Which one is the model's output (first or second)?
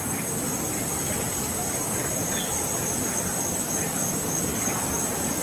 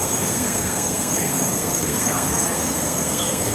second